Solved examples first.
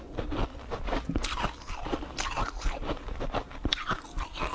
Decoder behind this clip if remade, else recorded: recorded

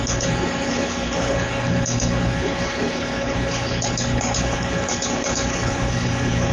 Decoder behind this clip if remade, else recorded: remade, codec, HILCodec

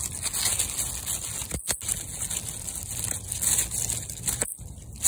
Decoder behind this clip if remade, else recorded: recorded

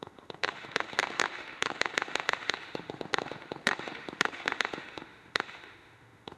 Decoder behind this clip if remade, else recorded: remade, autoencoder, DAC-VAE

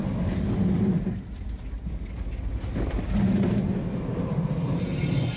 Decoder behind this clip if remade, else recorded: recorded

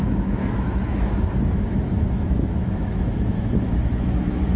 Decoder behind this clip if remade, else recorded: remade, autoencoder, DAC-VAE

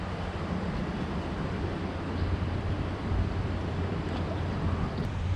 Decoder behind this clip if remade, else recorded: remade, vocoder, BigVGAN v2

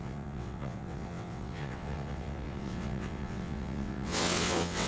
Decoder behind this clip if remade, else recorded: remade, vocoder, WaveNeXt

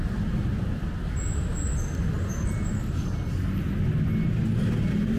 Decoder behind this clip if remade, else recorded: recorded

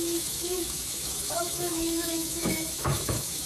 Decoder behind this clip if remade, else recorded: remade, autoencoder, DAC-VAE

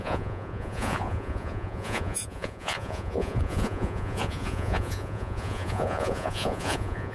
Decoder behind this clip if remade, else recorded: remade, vocoder, Vocos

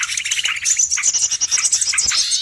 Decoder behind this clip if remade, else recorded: recorded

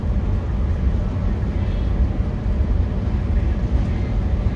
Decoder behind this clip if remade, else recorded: recorded